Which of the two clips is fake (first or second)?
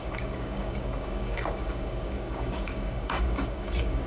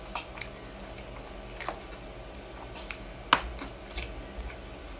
first